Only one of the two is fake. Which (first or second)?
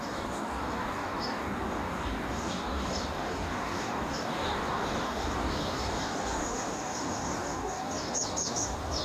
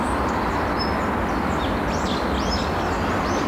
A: first